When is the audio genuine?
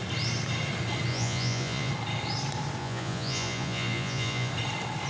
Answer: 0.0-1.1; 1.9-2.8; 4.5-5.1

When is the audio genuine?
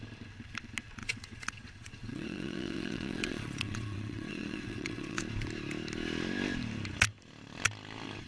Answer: 0.0-1.0; 5.2-8.3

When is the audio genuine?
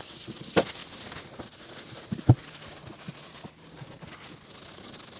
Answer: 0.0-5.2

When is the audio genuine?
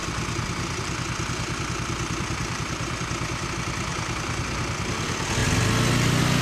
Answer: 3.5-3.9; 4.6-6.4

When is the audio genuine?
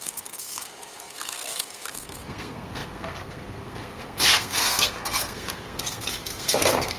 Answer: none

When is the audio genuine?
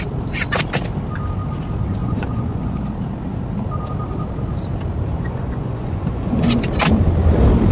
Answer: 0.0-2.0; 2.7-5.1; 6.6-7.7